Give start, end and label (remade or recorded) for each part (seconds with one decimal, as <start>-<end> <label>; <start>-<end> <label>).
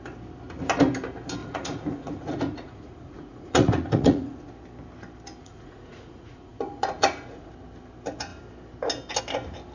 0.0-1.4 recorded; 1.4-4.5 remade; 4.5-5.4 recorded; 5.4-7.5 remade; 7.5-9.7 recorded